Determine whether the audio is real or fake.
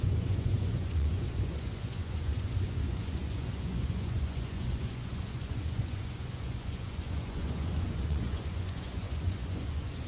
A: fake